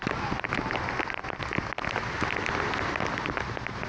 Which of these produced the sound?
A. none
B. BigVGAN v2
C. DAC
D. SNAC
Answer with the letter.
A